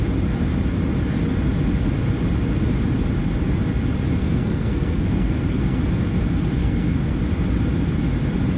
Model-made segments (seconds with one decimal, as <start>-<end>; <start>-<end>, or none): 4.2-5.8; 6.6-7.2